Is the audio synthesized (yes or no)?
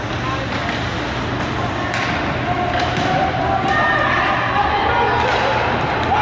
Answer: no